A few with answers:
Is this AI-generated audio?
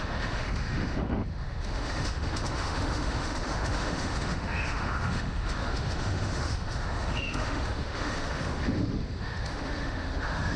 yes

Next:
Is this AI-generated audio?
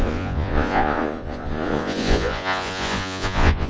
yes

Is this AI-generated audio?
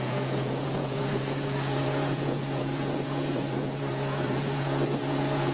yes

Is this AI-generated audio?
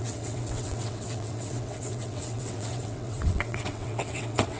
yes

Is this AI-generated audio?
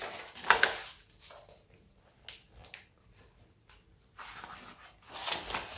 no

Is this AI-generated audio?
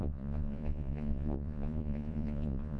yes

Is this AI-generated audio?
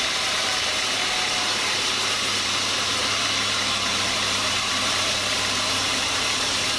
yes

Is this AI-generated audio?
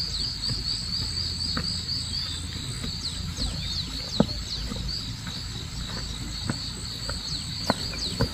no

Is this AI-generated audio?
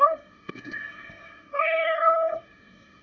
yes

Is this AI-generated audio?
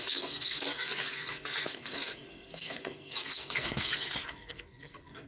yes